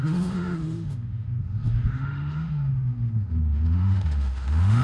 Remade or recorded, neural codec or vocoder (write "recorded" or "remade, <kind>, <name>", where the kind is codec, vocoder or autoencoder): remade, autoencoder, DAC-VAE